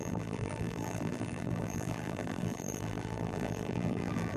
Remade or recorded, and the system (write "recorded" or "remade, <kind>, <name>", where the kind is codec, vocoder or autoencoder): remade, vocoder, BigVGAN v2